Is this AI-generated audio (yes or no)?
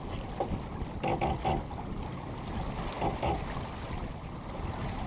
no